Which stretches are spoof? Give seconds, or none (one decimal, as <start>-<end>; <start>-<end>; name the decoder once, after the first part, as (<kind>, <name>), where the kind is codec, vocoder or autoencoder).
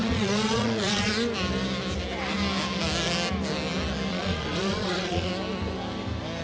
0.0-1.1 (vocoder, Vocos); 4.1-5.3